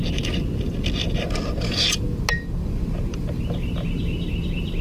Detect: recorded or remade recorded